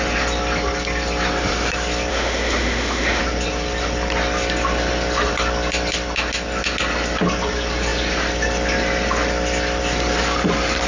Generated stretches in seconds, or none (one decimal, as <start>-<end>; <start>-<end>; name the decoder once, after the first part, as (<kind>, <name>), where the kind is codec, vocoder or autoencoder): 2.1-3.2 (autoencoder, DAC-VAE)